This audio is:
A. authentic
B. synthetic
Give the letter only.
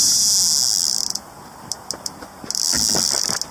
A